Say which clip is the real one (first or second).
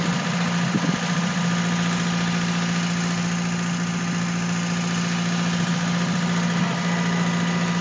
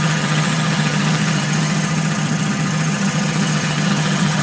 first